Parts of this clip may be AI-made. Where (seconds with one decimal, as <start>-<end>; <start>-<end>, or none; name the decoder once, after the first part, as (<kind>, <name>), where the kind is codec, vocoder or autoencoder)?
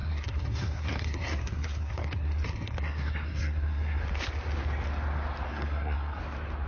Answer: 0.0-4.0 (codec, SNAC); 5.5-6.2